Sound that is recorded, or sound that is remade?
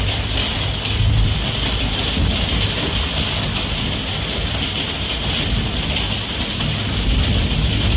recorded